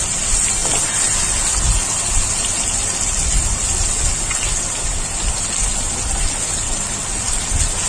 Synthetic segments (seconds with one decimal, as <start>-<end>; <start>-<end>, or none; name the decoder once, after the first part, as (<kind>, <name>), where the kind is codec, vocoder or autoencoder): none